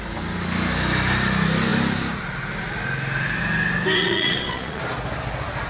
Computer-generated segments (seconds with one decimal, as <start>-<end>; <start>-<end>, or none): 4.0-4.8